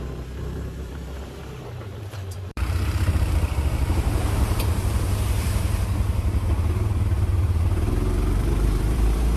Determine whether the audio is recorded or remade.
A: remade